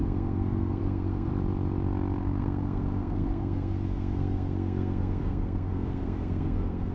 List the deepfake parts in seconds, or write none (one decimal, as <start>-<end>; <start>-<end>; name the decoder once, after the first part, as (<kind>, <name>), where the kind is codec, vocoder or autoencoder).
0.0-1.3 (codec, SNAC); 2.2-6.9